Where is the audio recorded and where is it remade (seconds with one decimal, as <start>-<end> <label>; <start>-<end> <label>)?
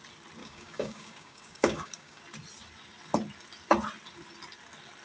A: 0.0-0.4 recorded; 0.4-2.2 remade; 2.2-5.0 recorded